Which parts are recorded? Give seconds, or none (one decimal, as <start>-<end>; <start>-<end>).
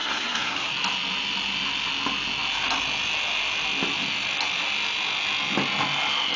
0.7-6.4